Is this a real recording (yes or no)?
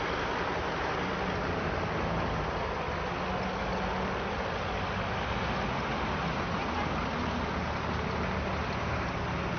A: yes